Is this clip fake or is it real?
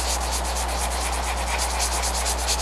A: real